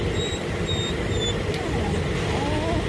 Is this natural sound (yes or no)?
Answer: yes